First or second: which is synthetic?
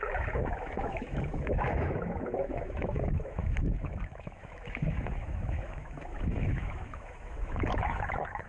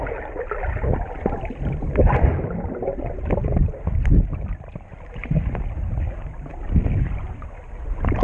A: first